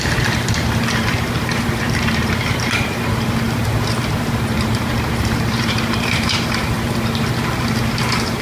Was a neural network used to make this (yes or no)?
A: yes